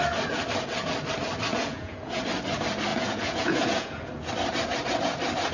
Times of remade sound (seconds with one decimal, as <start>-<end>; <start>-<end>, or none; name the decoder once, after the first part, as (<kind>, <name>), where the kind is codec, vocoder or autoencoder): 1.5-2.2 (vocoder, Vocos); 2.9-4.3